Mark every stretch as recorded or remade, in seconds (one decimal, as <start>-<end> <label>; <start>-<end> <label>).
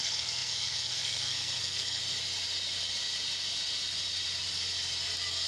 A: 0.0-2.0 remade; 2.0-5.5 recorded